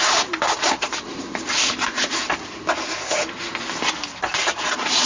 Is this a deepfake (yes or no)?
no